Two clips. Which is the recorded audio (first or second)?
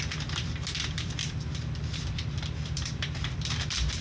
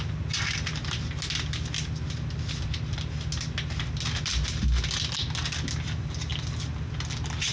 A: second